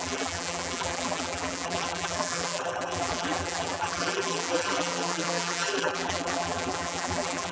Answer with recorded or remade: remade